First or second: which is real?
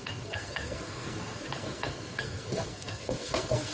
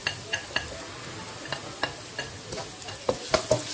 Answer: second